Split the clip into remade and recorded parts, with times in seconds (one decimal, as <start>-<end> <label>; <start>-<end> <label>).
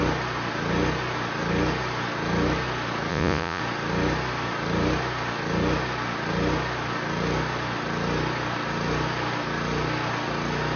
0.0-3.1 recorded; 3.1-3.6 remade; 3.6-10.8 recorded